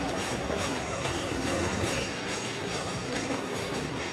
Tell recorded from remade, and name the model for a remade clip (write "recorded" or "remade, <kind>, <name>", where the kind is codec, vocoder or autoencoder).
remade, codec, SNAC